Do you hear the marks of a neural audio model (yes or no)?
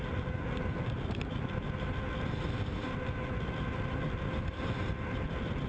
no